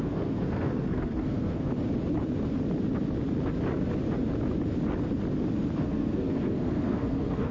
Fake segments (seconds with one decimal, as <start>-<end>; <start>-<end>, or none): 0.0-1.7; 5.8-7.5